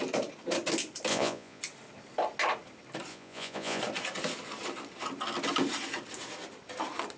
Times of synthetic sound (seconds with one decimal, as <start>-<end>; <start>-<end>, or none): 1.1-1.6; 3.1-3.8